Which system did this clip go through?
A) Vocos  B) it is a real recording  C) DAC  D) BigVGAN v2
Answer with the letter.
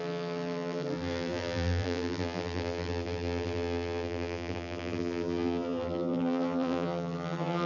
D